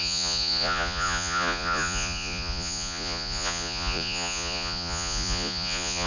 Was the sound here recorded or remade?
remade